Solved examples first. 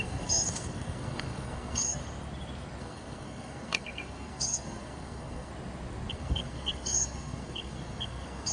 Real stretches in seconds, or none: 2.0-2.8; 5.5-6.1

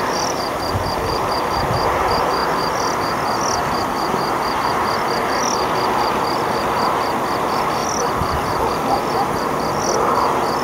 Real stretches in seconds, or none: 0.0-7.8; 8.7-10.6

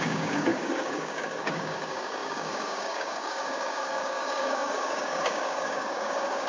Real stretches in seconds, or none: none